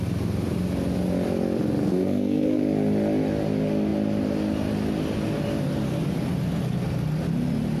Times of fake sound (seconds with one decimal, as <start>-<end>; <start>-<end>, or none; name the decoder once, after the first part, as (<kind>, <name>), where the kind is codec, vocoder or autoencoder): 1.8-2.6 (codec, SNAC)